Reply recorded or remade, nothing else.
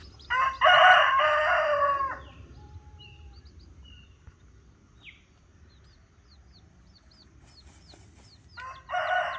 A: recorded